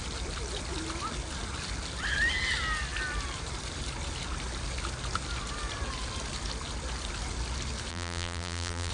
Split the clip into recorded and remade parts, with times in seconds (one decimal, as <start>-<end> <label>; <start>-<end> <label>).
0.0-7.9 recorded; 7.9-8.9 remade